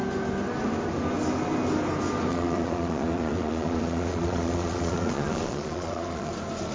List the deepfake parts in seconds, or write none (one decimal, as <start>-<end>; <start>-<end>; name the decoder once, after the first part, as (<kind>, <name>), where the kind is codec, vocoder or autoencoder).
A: 2.3-6.3 (vocoder, Vocos)